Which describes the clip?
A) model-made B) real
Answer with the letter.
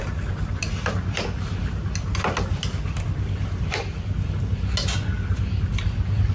B